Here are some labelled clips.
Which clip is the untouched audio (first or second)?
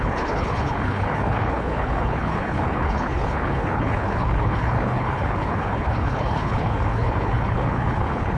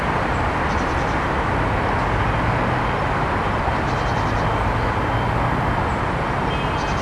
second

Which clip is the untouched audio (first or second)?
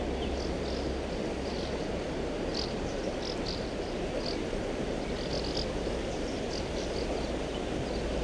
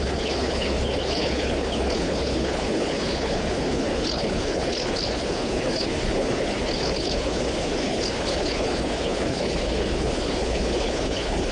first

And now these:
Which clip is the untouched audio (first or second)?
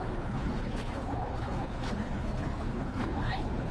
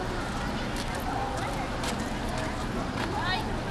second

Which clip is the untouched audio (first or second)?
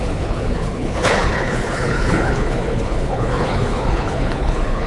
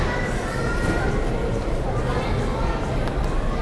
second